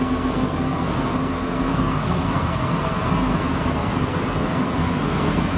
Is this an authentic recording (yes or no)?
no